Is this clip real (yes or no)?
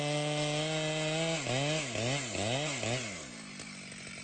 yes